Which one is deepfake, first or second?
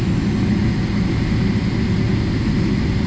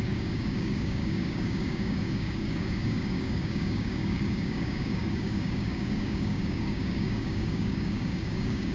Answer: second